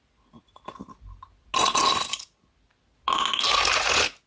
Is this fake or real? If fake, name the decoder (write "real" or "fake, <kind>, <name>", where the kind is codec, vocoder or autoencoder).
real